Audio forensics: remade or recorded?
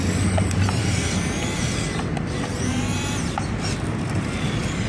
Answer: recorded